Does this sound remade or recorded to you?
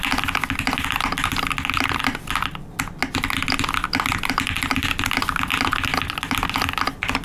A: recorded